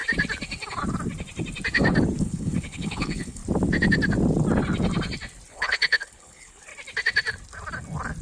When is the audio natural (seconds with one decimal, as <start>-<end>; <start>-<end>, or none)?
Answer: 0.0-2.2; 3.4-5.5; 6.7-8.2